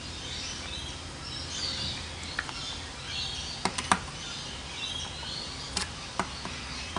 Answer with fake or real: real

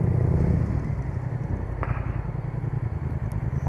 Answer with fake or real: real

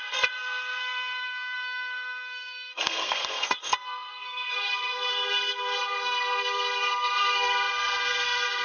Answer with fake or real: fake